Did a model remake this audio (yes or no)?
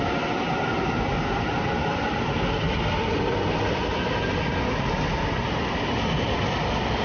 no